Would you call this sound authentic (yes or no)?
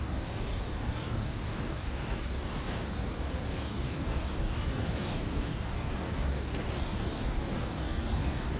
no